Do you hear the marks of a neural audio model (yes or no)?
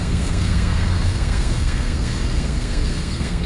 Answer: yes